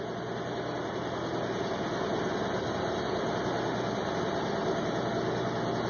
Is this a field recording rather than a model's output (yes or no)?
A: yes